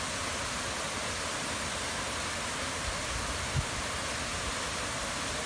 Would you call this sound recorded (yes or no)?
yes